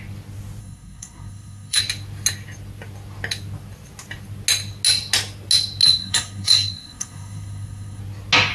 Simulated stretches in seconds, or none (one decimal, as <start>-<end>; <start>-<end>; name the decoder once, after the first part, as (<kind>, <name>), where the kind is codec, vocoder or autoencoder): 0.6-1.8 (codec, SNAC); 5.8-8.0

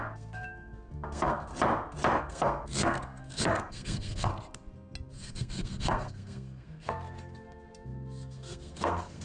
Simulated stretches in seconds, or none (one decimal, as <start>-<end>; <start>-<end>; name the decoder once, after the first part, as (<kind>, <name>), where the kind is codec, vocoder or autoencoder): 0.0-1.5 (codec, SNAC); 2.2-4.3; 5.1-9.2

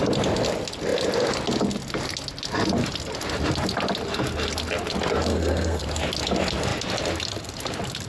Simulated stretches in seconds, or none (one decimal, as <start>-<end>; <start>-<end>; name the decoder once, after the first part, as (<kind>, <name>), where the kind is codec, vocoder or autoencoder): 5.3-5.8 (codec, SNAC)

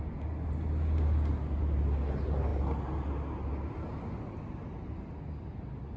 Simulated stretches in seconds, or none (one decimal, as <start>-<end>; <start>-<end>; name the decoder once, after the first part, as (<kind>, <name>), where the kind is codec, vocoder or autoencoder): none

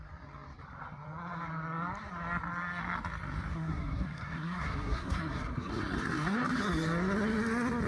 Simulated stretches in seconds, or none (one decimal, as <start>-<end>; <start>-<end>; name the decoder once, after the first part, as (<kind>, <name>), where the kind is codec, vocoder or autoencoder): 3.5-5.7 (codec, SNAC)

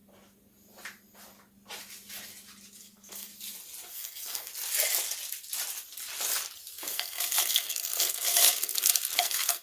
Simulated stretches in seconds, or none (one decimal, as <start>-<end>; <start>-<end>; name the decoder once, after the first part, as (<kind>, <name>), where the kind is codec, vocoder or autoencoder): 2.8-3.3 (codec, SNAC); 3.9-4.5; 6.7-9.6

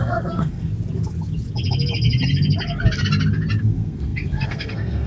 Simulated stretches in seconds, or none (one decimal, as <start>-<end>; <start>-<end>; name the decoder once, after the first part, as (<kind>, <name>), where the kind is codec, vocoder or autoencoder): 0.0-0.7 (codec, SNAC); 3.6-5.1

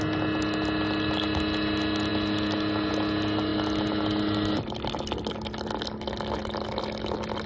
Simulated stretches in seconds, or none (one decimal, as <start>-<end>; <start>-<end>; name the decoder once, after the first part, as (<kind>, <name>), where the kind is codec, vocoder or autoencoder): none